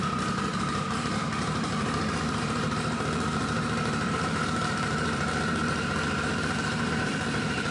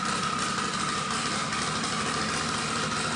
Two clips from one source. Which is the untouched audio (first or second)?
second